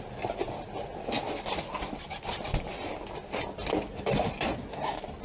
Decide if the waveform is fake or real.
real